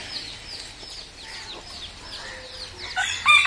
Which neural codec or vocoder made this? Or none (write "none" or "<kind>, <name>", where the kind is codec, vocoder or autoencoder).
none